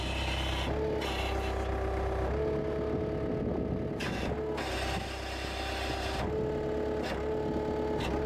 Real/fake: real